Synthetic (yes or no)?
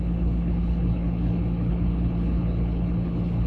yes